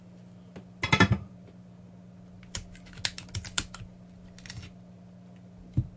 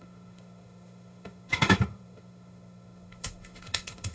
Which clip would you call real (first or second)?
first